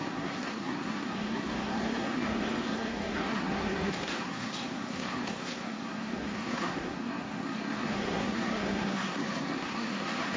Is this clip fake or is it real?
fake